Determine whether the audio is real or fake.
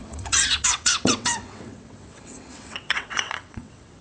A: fake